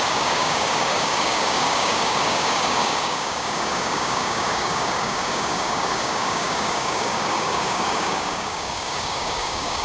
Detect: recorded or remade remade